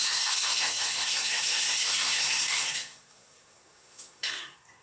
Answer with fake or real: fake